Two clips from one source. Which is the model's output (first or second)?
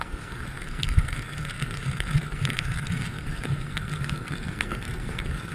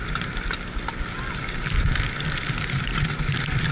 first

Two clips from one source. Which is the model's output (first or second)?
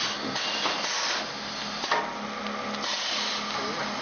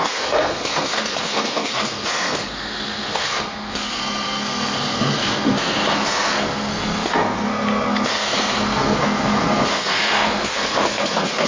second